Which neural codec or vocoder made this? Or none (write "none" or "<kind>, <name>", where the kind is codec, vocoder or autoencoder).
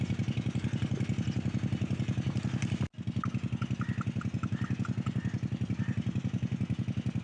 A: none